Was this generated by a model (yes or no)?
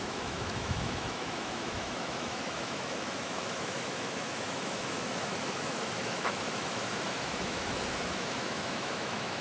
yes